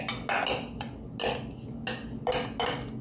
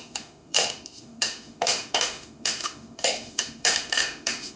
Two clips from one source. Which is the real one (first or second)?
first